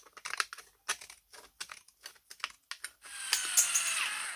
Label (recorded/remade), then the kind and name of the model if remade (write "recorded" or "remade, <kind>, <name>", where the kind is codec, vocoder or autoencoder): recorded